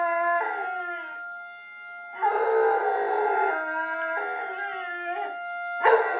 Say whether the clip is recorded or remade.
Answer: recorded